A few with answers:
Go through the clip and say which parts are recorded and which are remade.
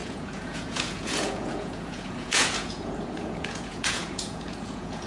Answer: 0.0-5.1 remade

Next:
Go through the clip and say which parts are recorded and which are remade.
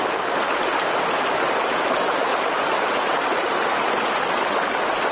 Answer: 0.0-2.6 recorded; 2.6-4.4 remade; 4.4-5.1 recorded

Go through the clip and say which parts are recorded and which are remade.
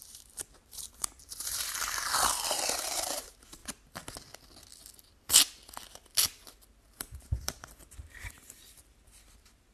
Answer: 0.0-3.6 remade; 3.6-7.2 recorded; 7.2-9.7 remade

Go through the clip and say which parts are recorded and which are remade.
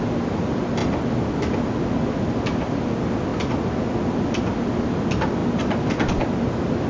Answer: 0.0-5.4 recorded; 5.4-6.9 remade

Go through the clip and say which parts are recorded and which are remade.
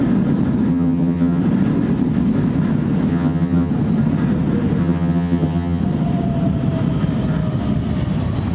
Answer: 0.0-0.7 recorded; 0.7-1.4 remade; 1.4-3.1 recorded; 3.1-3.7 remade; 3.7-4.8 recorded; 4.8-5.8 remade; 5.8-8.5 recorded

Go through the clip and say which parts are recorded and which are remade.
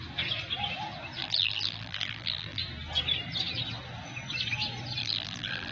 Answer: 0.0-1.2 recorded; 1.2-2.6 remade; 2.6-5.0 recorded; 5.0-5.7 remade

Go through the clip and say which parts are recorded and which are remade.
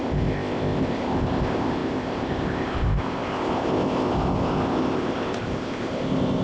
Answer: 0.0-6.4 remade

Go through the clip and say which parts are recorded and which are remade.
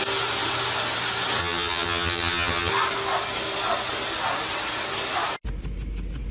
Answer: 0.0-1.4 recorded; 1.4-2.7 remade; 2.7-6.3 recorded